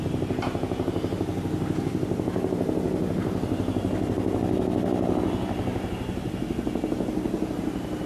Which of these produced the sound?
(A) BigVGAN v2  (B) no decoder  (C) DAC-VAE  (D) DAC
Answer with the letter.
B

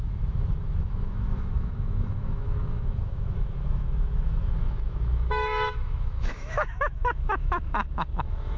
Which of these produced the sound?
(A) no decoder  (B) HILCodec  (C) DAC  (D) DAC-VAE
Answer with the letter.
D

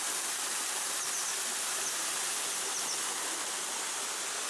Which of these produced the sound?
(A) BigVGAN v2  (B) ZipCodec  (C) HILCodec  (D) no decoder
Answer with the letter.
D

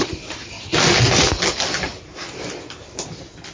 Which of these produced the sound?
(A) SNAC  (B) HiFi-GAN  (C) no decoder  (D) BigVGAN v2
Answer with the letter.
C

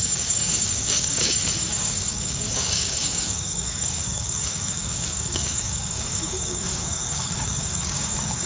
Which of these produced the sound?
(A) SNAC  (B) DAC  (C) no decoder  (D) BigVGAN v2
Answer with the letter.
B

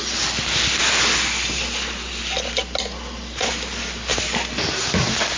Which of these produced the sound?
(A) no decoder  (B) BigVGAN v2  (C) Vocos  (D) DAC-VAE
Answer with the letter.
A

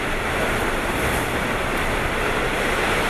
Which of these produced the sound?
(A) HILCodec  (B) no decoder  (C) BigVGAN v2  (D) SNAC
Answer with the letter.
B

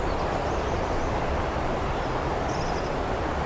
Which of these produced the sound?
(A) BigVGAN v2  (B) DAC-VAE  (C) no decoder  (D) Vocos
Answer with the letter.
A